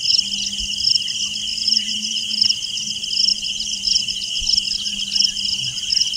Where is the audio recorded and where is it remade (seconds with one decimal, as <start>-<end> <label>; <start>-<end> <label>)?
0.0-1.5 recorded; 1.5-2.3 remade; 2.3-3.3 recorded; 3.3-4.4 remade; 4.4-6.2 recorded